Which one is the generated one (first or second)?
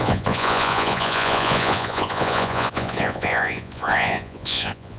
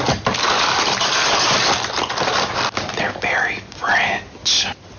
first